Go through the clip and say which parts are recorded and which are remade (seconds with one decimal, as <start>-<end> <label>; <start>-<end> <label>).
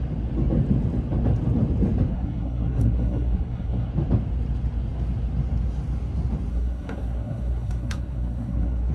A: 0.0-2.1 recorded; 2.1-3.9 remade; 3.9-6.5 recorded; 6.5-8.9 remade